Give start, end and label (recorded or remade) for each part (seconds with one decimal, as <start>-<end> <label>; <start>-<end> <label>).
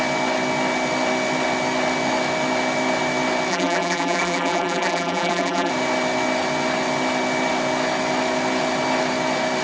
0.0-3.5 recorded; 3.5-5.7 remade; 5.7-9.6 recorded